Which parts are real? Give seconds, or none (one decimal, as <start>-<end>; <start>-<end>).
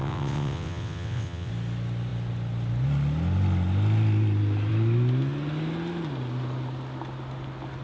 1.5-7.8